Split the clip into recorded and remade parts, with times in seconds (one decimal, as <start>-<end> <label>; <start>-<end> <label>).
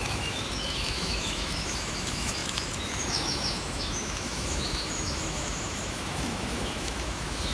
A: 0.0-7.5 remade